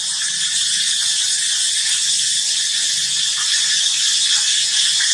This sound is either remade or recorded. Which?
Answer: remade